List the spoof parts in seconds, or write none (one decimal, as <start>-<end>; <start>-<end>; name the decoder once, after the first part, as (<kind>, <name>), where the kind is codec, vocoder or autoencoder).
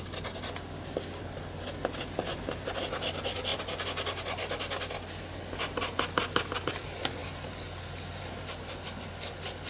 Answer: none